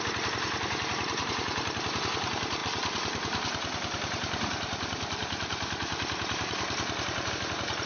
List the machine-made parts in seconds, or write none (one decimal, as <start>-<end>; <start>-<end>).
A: 2.6-7.3